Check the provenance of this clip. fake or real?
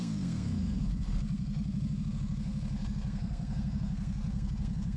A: fake